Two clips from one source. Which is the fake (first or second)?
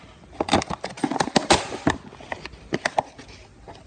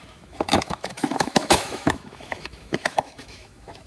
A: second